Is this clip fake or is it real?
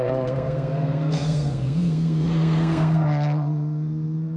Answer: fake